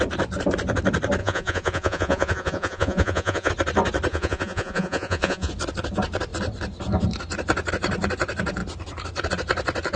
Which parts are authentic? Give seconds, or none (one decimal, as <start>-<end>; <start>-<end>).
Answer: 0.0-1.2; 3.5-4.1; 5.5-10.0